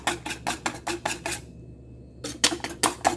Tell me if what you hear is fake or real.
real